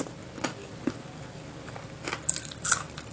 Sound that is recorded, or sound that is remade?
recorded